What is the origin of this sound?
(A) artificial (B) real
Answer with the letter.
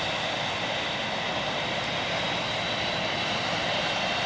B